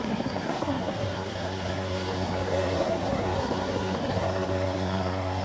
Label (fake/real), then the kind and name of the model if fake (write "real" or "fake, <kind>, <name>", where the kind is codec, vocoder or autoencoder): fake, codec, SNAC